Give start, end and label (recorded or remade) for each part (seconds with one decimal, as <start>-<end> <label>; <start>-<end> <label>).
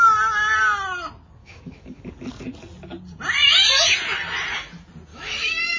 0.0-1.4 recorded; 1.4-2.1 remade; 2.1-5.1 recorded; 5.1-5.8 remade